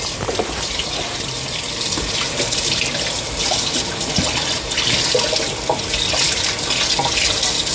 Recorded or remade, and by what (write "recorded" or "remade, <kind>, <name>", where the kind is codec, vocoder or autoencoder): recorded